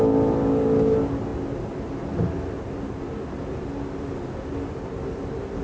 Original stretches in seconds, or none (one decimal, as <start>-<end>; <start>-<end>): 0.0-5.6